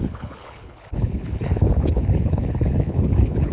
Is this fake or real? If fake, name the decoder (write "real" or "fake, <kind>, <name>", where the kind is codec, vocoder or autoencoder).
fake, codec, HILCodec